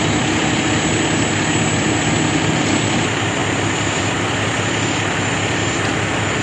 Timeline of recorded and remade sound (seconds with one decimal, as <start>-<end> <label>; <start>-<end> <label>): 0.0-6.4 recorded